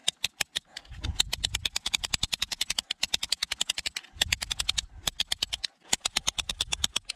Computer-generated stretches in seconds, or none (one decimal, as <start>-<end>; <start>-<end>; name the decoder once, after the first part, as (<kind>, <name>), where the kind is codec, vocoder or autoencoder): none